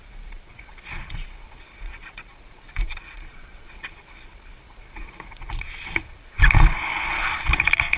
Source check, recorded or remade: remade